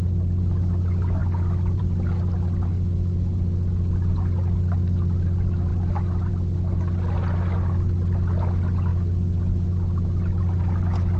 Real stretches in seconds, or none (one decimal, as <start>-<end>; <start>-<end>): 0.0-2.7; 4.1-11.2